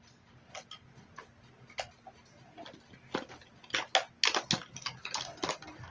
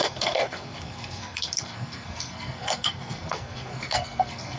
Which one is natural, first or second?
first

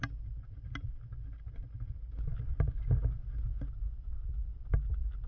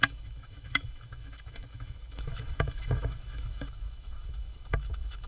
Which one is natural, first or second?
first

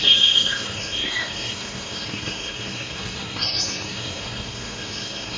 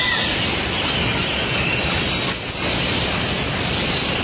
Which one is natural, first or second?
second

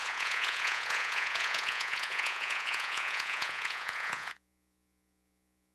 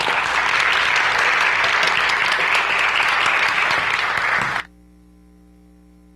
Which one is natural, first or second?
second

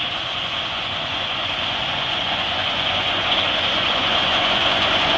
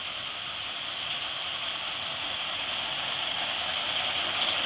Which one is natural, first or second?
second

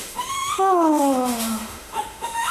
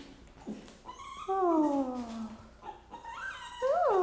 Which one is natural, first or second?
second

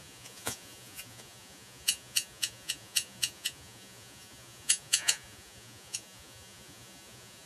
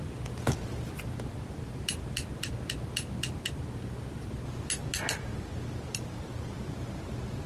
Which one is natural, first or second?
second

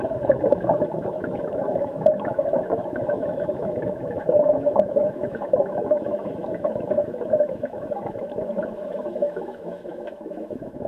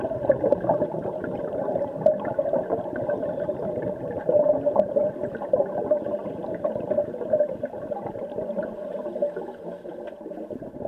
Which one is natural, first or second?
second